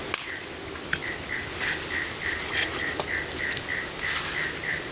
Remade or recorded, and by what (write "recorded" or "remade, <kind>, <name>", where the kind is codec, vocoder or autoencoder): recorded